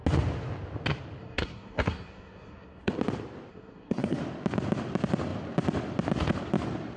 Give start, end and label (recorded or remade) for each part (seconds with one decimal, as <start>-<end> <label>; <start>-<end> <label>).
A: 0.0-1.2 recorded; 1.2-2.9 remade; 2.9-3.5 recorded; 3.5-4.2 remade; 4.2-7.0 recorded